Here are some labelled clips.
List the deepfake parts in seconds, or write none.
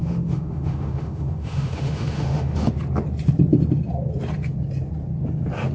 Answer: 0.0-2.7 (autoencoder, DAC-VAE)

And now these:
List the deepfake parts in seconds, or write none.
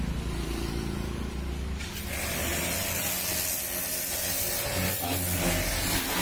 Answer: none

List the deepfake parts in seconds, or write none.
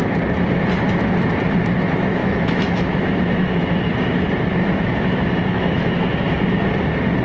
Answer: 2.2-3.9 (autoencoder, DAC-VAE); 4.6-6.4